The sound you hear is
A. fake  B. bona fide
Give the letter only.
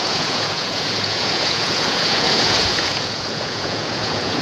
A